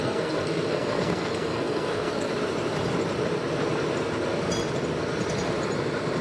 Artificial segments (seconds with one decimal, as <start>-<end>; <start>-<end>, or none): 0.0-2.3